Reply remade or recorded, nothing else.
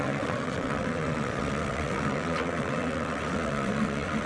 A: remade